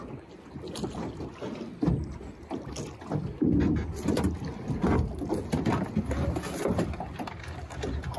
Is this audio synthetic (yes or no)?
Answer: no